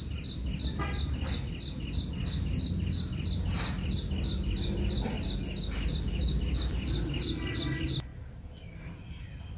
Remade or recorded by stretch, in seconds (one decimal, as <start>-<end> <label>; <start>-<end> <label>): 0.0-9.6 recorded